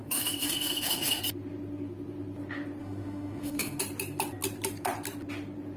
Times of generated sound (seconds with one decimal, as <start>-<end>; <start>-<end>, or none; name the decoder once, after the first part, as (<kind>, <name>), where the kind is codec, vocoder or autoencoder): 0.0-1.2 (autoencoder, DAC-VAE); 2.8-3.8